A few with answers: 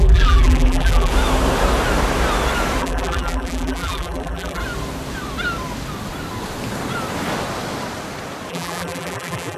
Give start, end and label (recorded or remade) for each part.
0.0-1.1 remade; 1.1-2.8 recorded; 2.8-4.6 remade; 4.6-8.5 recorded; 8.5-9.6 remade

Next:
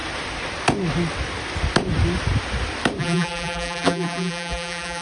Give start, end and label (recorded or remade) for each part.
0.0-3.0 recorded; 3.0-5.0 remade

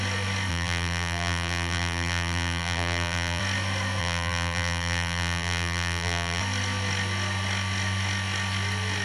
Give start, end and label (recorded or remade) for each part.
0.0-0.5 recorded; 0.5-3.4 remade; 3.4-4.0 recorded; 4.0-6.4 remade; 6.4-9.0 recorded

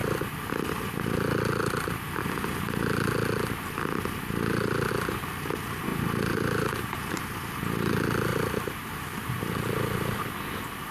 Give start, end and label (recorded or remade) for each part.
0.0-5.9 recorded; 5.9-7.6 remade; 7.6-8.3 recorded; 8.3-9.6 remade; 9.6-10.9 recorded

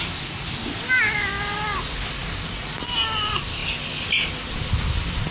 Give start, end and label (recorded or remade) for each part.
0.0-2.2 recorded; 2.2-2.8 remade; 2.8-5.3 recorded

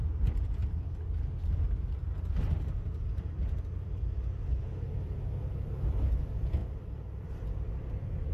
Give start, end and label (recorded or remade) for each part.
0.0-8.3 remade